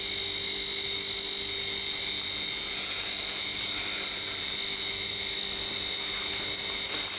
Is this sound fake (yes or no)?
no